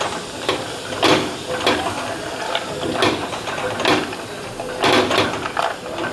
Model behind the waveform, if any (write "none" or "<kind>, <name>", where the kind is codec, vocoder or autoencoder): none